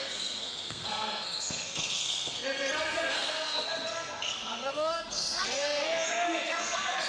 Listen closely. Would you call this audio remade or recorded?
remade